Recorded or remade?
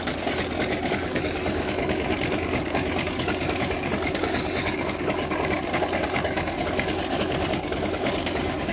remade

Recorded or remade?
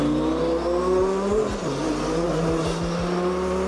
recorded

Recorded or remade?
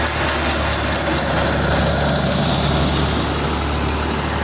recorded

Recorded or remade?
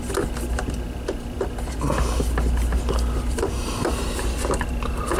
recorded